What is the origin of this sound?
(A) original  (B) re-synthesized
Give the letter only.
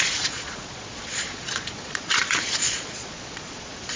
B